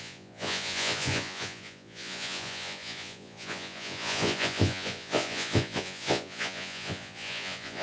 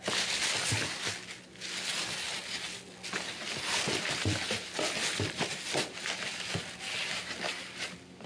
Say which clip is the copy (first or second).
first